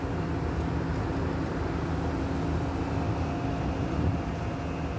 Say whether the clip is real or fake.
real